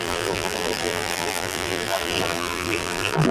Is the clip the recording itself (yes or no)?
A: no